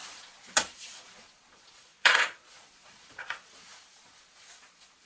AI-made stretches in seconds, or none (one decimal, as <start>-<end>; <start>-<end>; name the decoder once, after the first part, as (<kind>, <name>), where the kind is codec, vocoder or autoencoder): 0.0-5.1 (vocoder, Vocos)